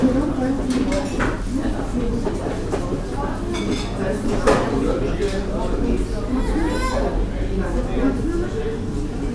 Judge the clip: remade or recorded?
recorded